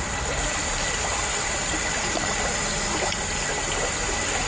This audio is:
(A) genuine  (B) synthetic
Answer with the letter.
A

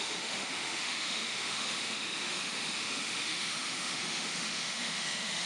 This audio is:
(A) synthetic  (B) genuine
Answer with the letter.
A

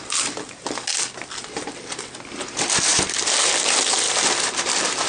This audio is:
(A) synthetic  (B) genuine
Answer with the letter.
B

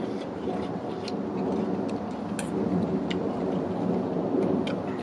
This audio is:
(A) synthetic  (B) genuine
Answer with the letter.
B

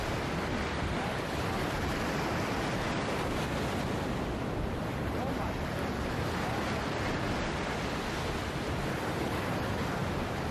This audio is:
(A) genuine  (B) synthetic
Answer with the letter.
A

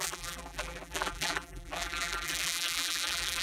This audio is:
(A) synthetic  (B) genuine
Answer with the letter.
A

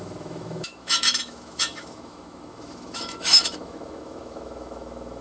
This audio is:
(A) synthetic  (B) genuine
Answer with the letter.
A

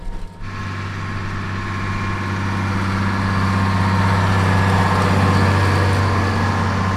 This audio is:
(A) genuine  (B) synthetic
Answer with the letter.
A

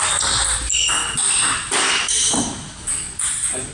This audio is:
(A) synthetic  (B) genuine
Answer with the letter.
B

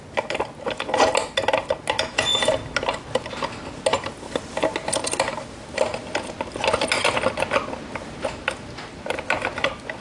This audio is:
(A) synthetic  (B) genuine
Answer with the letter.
B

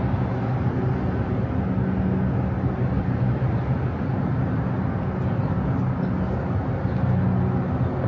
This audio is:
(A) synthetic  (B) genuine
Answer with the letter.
B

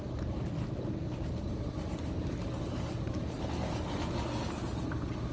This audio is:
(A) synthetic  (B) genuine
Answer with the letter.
B